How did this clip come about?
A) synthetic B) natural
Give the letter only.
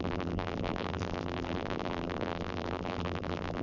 A